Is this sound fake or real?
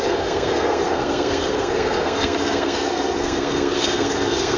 fake